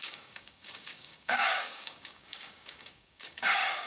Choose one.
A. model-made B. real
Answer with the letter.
A